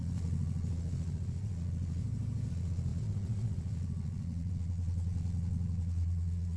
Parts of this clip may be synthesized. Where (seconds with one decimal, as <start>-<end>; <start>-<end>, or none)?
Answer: 0.0-2.0; 2.5-6.6